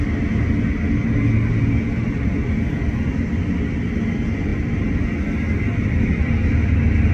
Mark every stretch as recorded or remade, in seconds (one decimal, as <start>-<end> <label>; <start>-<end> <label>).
0.0-7.1 recorded